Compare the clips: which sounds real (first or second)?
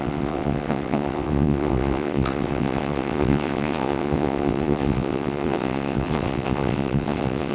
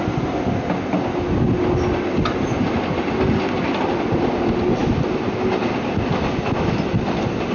second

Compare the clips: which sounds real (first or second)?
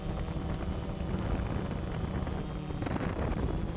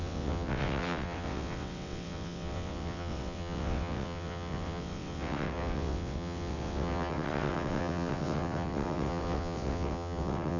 first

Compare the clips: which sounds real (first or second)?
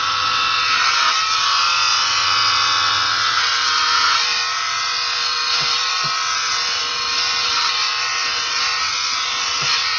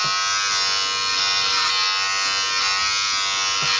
second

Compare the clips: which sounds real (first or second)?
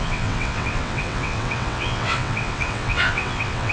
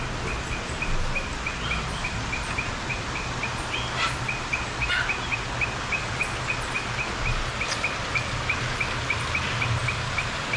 second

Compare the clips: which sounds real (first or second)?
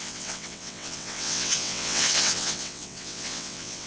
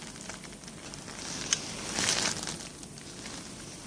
second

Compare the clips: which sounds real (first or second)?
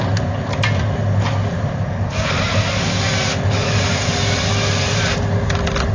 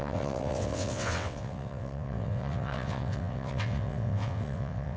first